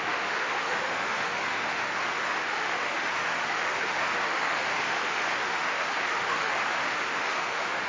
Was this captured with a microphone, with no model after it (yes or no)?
no